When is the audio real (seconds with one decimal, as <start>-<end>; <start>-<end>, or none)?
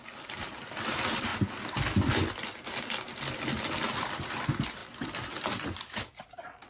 0.0-6.7